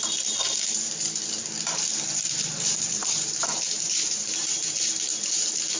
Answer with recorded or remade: remade